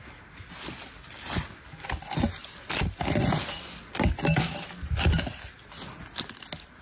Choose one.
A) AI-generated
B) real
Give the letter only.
B